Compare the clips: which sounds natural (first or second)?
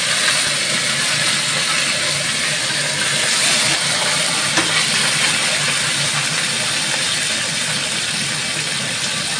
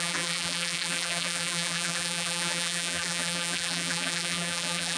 first